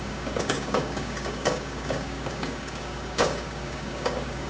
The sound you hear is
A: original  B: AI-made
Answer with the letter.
B